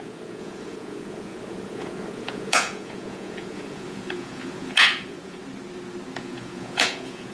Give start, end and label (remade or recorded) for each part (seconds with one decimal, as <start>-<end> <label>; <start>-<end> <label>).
0.0-5.4 remade; 5.4-6.2 recorded; 6.2-7.3 remade